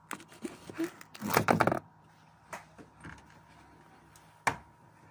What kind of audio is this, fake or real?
real